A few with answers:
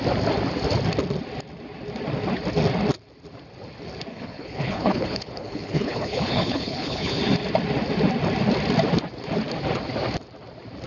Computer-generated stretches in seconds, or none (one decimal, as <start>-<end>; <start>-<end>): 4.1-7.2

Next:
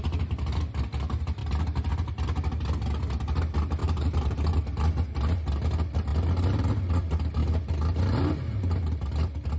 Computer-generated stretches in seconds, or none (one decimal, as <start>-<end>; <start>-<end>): 3.8-4.6

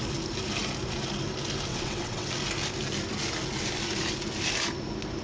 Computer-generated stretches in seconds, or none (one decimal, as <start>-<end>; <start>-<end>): 1.7-2.3

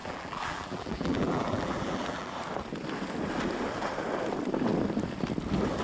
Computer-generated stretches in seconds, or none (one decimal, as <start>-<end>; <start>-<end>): 0.0-2.3

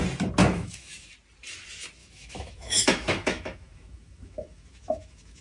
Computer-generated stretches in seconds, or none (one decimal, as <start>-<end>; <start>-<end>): 0.4-1.1; 2.0-5.4

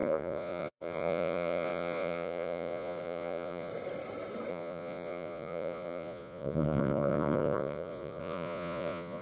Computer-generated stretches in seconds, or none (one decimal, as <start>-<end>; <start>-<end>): 0.0-3.7; 4.5-9.2